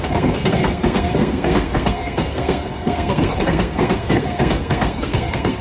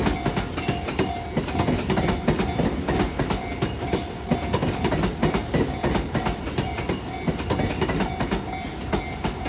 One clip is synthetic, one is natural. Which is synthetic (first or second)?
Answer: first